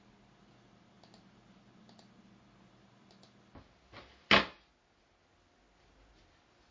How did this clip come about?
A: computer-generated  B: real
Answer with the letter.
B